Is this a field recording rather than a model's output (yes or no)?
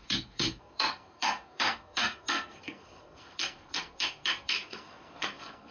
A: no